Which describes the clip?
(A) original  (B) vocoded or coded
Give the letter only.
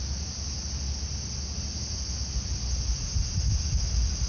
A